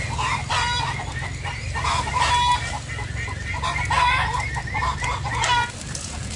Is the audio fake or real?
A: real